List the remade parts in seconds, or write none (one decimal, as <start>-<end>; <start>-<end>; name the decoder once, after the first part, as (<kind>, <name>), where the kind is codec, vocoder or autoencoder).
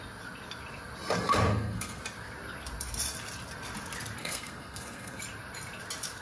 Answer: 1.5-2.0 (codec, SNAC); 4.2-5.2